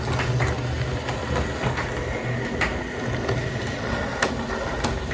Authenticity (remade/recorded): recorded